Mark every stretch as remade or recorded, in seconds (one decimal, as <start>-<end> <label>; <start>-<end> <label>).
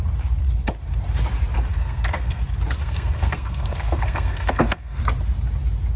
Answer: 0.0-1.7 recorded; 1.7-2.4 remade; 2.4-2.8 recorded; 2.8-5.0 remade; 5.0-6.0 recorded